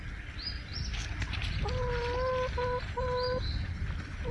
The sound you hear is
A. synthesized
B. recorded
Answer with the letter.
B